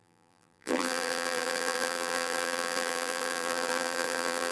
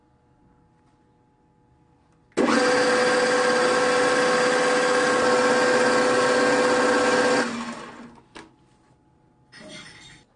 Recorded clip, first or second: second